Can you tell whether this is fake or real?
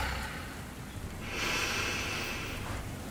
real